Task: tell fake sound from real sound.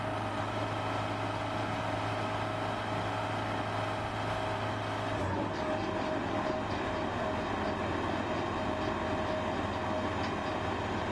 real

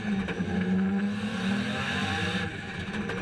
real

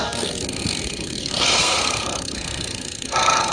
fake